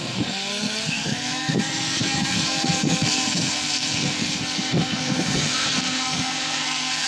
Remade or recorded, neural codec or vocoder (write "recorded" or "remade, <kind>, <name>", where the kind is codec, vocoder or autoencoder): remade, codec, SNAC